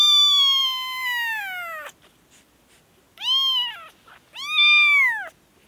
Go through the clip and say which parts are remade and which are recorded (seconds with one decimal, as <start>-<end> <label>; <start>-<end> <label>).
0.0-5.7 recorded